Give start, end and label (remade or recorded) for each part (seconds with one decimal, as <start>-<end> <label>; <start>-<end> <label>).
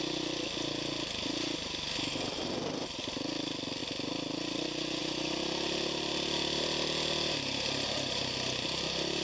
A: 0.0-9.2 recorded